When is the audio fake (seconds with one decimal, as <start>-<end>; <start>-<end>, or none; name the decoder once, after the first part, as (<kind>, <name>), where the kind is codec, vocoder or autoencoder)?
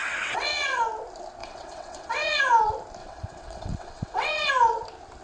0.0-0.8 (vocoder, WaveNeXt); 1.4-2.4; 3.0-4.5